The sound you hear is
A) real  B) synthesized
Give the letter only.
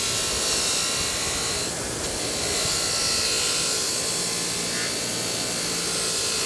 A